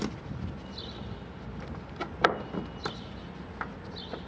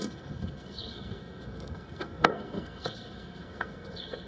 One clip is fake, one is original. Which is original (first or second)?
first